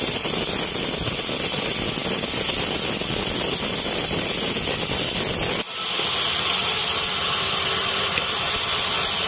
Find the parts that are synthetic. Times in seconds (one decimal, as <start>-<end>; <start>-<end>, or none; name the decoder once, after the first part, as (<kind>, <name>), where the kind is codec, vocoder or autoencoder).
none